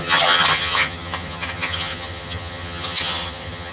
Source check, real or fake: fake